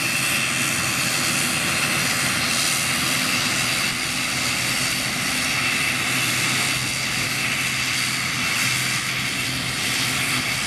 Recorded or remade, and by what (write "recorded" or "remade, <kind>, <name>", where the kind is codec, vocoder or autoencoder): recorded